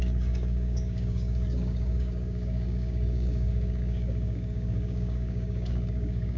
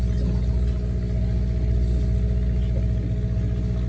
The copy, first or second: first